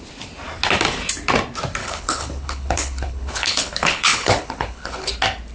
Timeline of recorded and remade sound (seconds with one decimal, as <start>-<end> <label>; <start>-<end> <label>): 0.0-1.8 recorded; 1.8-5.1 remade; 5.1-5.5 recorded

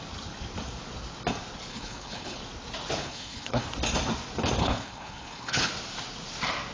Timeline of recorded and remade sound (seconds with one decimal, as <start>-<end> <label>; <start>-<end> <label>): 0.0-1.7 recorded; 1.7-2.4 remade; 2.4-3.0 recorded; 3.0-3.7 remade; 3.7-4.6 recorded; 4.6-5.7 remade; 5.7-6.7 recorded

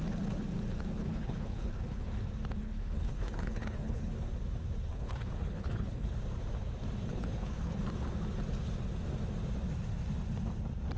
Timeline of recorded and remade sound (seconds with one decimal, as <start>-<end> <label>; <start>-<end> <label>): 0.0-1.0 recorded; 1.0-2.2 remade; 2.2-2.6 recorded; 2.6-4.1 remade; 4.1-4.9 recorded; 4.9-6.1 remade; 6.1-7.1 recorded; 7.1-7.8 remade; 7.8-11.0 recorded

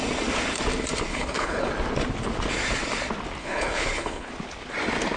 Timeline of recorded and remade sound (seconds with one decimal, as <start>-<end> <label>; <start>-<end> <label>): 0.0-1.1 recorded; 1.1-1.7 remade; 1.7-3.4 recorded; 3.4-4.3 remade; 4.3-5.2 recorded

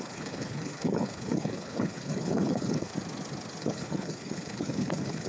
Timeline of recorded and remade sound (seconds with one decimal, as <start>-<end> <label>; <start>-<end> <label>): 0.0-2.9 remade; 2.9-3.6 recorded; 3.6-5.3 remade